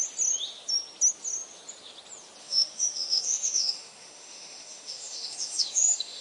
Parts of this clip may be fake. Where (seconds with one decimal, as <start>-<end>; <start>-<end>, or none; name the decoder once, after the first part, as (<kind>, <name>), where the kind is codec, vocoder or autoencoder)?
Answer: 2.4-6.2 (autoencoder, DAC-VAE)